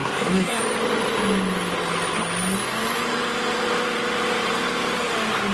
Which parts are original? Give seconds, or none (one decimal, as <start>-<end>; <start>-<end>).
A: 0.6-5.5